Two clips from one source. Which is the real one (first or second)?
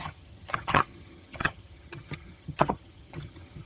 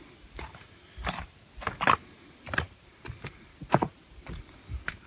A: second